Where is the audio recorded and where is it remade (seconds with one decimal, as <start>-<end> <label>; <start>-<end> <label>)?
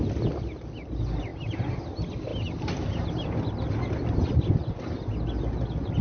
0.0-1.3 recorded; 1.3-1.8 remade; 1.8-6.0 recorded